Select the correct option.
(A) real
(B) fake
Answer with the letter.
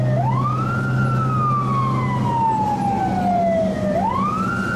A